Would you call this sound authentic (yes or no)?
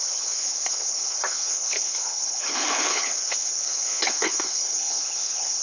no